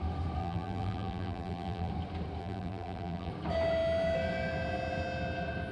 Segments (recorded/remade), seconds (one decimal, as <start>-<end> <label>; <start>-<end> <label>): 0.0-0.4 recorded; 0.4-1.9 remade; 1.9-2.4 recorded; 2.4-3.3 remade; 3.3-5.7 recorded